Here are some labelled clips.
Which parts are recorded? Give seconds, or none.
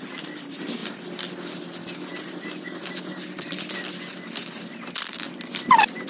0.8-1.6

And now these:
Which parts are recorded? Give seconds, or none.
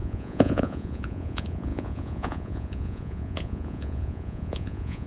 none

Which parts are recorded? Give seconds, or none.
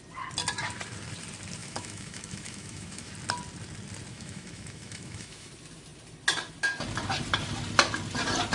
0.0-1.6; 3.1-4.1; 5.5-8.5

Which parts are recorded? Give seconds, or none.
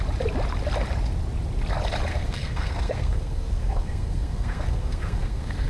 0.0-2.1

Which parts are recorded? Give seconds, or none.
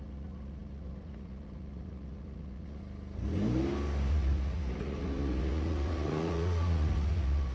2.8-4.1